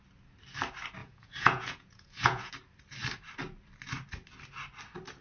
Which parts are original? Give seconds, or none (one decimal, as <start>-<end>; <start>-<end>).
0.0-1.0; 2.5-5.2